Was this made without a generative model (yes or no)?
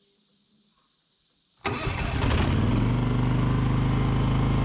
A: yes